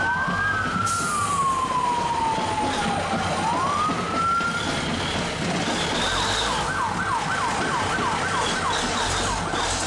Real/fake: real